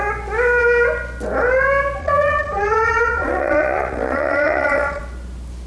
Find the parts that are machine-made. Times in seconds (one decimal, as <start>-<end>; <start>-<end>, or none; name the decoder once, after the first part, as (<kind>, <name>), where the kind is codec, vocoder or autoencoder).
2.0-5.0 (vocoder, Vocos)